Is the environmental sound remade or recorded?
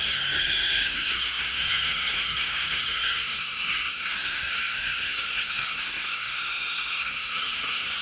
remade